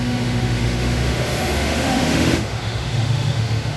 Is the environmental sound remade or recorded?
remade